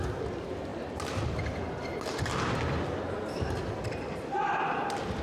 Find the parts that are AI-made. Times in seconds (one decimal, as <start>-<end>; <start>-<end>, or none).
none